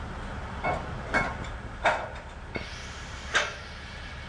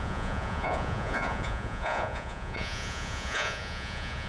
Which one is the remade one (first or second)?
second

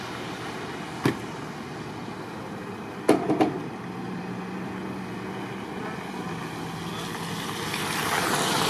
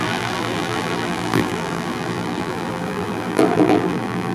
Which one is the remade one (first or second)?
second